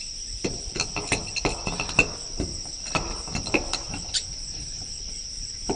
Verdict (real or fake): fake